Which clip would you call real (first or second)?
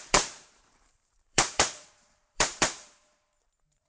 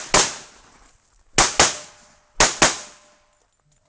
second